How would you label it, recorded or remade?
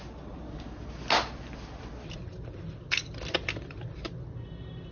recorded